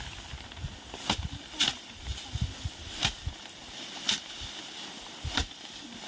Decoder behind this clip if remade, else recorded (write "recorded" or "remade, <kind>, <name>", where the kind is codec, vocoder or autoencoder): recorded